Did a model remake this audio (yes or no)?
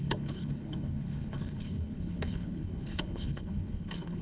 yes